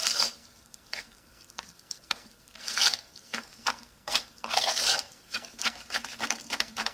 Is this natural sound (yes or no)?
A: no